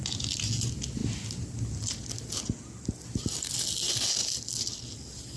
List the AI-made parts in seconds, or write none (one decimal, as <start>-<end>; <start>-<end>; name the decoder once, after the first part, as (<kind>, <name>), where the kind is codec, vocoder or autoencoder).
none